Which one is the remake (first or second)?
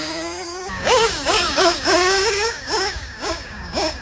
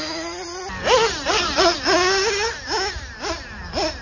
first